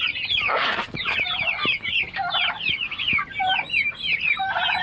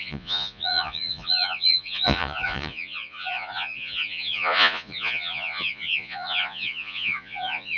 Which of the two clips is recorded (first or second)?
first